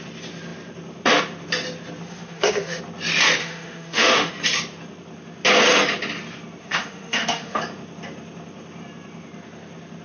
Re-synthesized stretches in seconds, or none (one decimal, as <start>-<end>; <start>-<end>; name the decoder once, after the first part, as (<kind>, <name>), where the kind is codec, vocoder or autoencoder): 2.1-2.8 (autoencoder, DAC-VAE); 3.4-4.3; 6.6-7.6